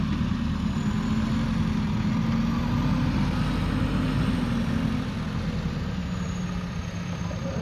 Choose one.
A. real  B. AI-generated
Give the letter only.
A